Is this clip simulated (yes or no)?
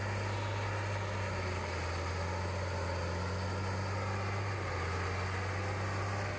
no